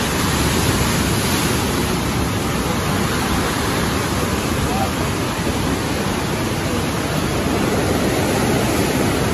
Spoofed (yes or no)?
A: no